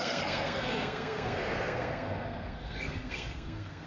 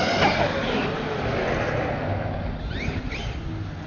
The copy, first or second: first